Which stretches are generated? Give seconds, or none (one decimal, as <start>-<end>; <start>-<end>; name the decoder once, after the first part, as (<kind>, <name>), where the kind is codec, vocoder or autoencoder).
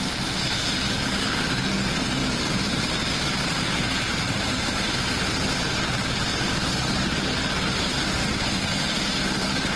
2.2-4.9 (vocoder, BigVGAN v2)